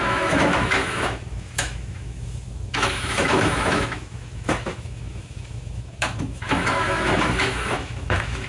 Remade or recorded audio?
remade